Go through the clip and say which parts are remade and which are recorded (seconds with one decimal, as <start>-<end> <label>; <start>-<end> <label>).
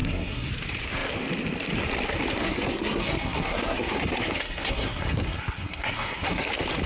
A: 0.0-0.5 remade; 0.5-2.4 recorded; 2.4-6.5 remade; 6.5-6.9 recorded